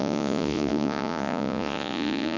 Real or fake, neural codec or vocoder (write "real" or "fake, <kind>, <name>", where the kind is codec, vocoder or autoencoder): fake, vocoder, Vocos